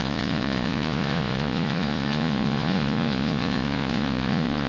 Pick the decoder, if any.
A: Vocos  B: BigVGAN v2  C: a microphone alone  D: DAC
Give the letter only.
A